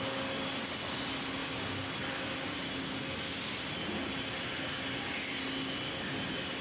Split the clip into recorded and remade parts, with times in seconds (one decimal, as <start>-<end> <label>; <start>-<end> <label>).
0.0-6.6 recorded